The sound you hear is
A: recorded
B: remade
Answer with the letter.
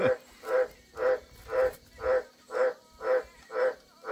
A